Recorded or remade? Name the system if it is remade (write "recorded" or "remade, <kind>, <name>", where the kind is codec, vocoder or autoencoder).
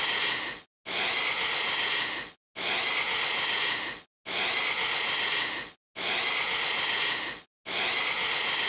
recorded